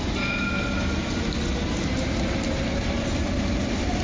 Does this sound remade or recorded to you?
recorded